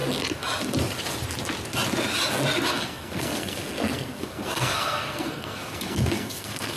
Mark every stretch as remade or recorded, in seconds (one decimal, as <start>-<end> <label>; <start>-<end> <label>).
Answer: 0.0-2.7 recorded; 2.7-6.8 remade